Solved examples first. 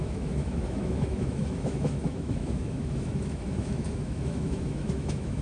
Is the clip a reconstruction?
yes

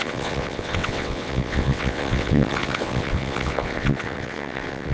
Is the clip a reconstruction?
yes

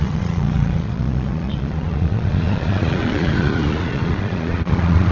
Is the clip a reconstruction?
yes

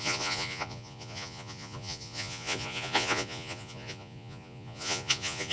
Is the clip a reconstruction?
yes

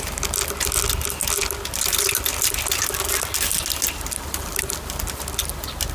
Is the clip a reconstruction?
no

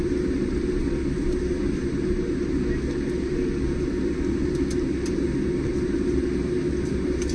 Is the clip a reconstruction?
no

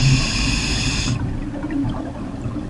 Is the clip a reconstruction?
no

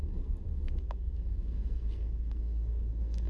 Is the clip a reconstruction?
yes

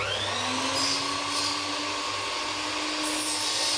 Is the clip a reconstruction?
no